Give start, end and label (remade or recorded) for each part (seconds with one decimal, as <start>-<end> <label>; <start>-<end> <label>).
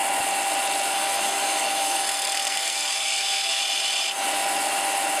0.0-0.9 recorded; 0.9-3.6 remade; 3.6-5.2 recorded